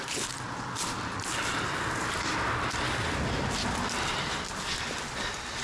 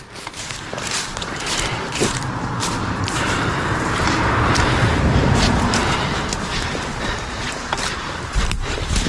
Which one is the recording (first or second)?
first